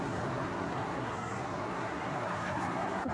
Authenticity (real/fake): fake